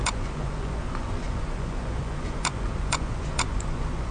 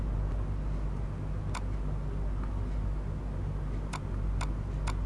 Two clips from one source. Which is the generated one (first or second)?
first